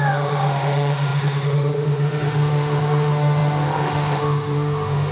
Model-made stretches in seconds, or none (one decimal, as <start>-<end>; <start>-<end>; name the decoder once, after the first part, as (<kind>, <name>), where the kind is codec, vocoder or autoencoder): 0.0-5.1 (autoencoder, DAC-VAE)